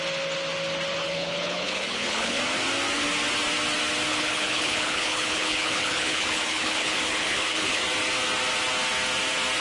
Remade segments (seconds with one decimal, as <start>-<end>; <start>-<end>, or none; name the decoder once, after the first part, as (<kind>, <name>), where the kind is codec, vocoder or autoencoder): 1.0-2.4 (codec, HILCodec); 4.1-7.8